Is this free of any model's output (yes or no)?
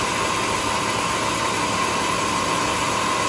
yes